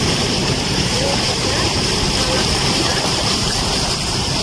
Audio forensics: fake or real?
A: fake